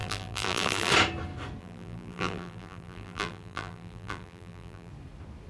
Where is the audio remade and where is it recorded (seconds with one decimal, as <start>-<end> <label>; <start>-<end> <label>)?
0.0-0.9 remade; 0.9-1.6 recorded; 1.6-4.9 remade; 4.9-5.5 recorded